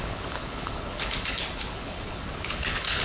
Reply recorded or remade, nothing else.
remade